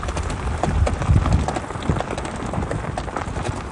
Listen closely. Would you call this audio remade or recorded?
recorded